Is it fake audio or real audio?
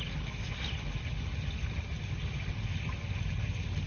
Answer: real